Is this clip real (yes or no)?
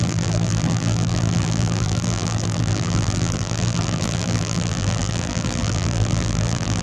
no